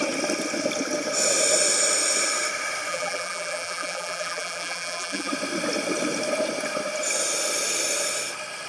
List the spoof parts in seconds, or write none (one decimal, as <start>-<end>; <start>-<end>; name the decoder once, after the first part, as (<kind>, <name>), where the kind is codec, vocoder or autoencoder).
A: 2.9-5.3 (vocoder, BigVGAN v2)